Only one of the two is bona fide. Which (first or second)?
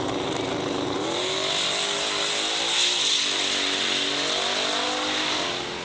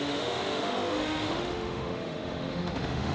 first